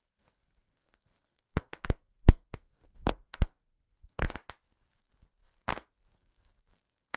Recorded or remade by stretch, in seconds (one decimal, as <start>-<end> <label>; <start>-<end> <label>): 0.0-4.4 remade; 4.4-5.0 recorded; 5.0-7.2 remade